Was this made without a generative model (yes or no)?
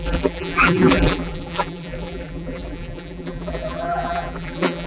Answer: no